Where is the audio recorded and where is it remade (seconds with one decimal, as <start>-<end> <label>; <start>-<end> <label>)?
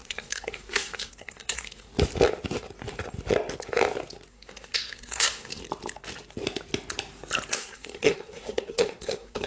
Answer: 0.0-1.9 remade; 1.9-4.3 recorded; 4.3-5.6 remade; 5.6-7.5 recorded; 7.5-9.5 remade